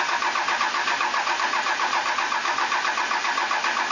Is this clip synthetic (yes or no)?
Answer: no